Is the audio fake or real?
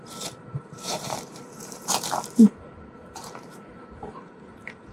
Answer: fake